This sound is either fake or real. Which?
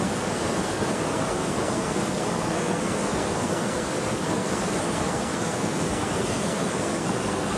fake